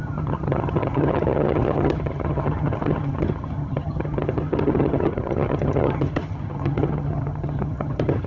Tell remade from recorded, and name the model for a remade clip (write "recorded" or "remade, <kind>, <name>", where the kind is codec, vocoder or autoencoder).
remade, vocoder, HiFi-GAN